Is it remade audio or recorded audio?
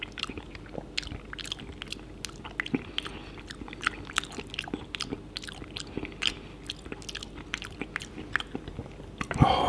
recorded